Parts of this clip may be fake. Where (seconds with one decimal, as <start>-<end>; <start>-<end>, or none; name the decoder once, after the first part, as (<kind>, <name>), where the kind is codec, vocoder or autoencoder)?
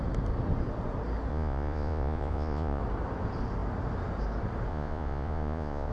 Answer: 1.3-2.8 (vocoder, Vocos); 4.7-5.9